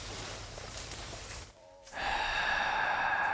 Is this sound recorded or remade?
remade